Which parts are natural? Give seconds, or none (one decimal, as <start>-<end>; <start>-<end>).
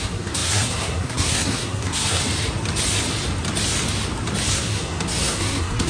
2.2-4.5